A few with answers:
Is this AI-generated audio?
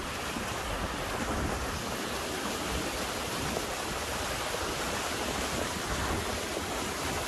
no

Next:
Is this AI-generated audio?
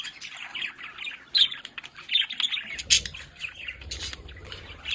no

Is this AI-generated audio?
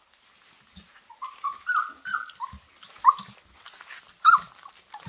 no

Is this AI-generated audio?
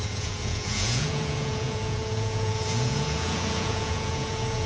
yes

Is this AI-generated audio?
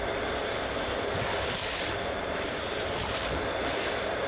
no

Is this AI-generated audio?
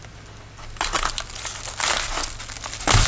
no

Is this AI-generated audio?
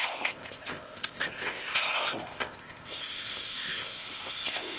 yes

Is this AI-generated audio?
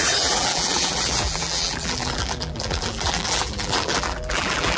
yes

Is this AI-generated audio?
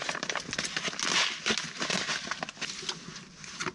no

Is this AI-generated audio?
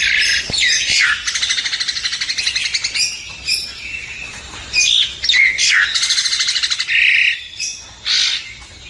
no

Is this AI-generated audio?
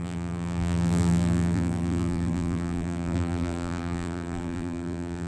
yes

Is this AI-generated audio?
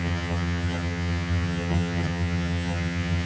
yes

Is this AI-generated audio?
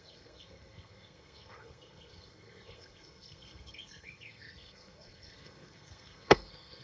yes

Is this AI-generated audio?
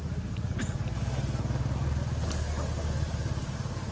no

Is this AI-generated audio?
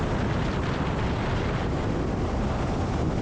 yes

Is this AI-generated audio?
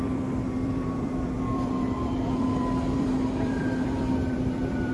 yes